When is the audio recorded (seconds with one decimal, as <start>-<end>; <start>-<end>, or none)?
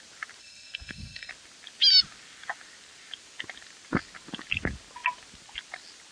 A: 0.0-0.4; 1.3-6.1